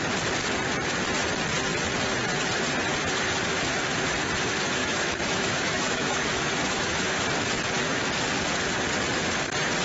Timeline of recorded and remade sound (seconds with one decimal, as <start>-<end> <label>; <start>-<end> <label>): 0.0-4.8 recorded; 4.8-7.1 remade; 7.1-9.8 recorded

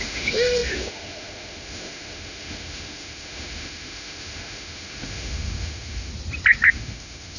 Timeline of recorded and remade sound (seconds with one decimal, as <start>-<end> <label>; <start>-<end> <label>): 0.0-6.1 remade; 6.1-6.7 recorded; 6.7-7.4 remade

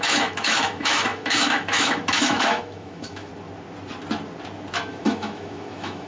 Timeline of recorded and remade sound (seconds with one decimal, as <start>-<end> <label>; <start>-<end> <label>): 0.0-3.3 remade; 3.3-4.9 recorded; 4.9-6.1 remade

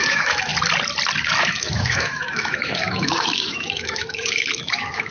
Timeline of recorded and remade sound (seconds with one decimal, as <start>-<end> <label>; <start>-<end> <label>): 0.0-0.5 remade; 0.5-1.4 recorded; 1.4-5.1 remade

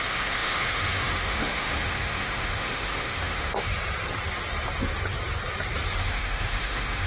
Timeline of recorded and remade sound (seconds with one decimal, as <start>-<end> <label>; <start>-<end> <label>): 0.0-3.7 remade; 3.7-6.0 recorded; 6.0-7.1 remade

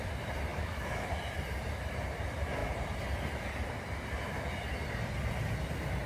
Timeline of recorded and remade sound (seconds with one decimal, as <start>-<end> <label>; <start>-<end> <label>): 0.0-0.5 recorded; 0.5-1.1 remade; 1.1-6.1 recorded

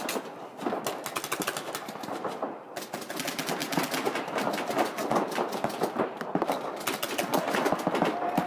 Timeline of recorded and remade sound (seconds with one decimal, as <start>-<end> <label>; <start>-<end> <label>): 0.0-8.5 recorded